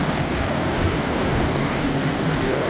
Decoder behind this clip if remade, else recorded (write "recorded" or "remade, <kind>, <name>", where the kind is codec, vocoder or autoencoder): remade, codec, DAC